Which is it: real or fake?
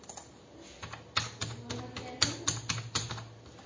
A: real